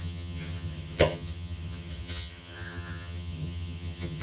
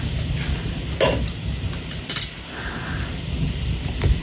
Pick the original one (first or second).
second